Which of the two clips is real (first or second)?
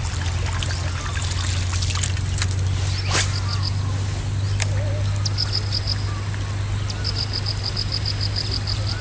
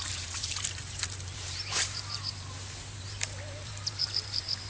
first